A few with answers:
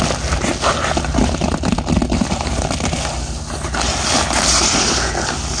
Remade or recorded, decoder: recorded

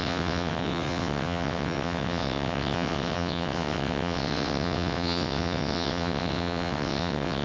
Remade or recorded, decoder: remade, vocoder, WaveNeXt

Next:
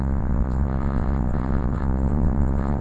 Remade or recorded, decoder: remade, vocoder, WaveNeXt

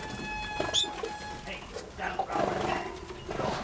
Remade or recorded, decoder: recorded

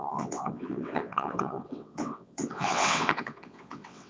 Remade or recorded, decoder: remade, vocoder, WaveNeXt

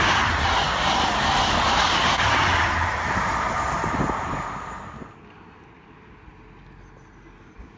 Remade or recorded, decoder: recorded